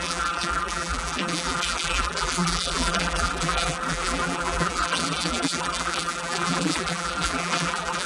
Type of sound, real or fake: fake